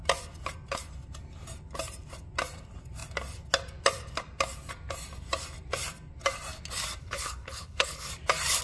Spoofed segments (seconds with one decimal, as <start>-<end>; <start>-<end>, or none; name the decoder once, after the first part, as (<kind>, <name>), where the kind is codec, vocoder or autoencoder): 7.0-8.1 (codec, HILCodec)